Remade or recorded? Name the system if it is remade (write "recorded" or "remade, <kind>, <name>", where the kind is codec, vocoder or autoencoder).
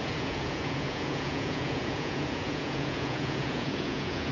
remade, vocoder, Vocos